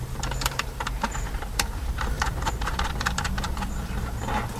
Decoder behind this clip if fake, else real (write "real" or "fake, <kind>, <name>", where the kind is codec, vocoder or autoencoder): fake, vocoder, BigVGAN v2